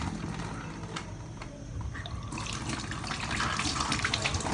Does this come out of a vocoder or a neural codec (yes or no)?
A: no